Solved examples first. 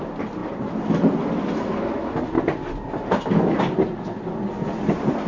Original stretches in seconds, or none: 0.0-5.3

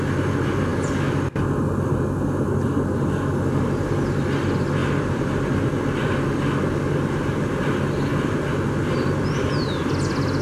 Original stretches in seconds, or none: 0.0-4.8; 5.6-8.1; 9.9-10.4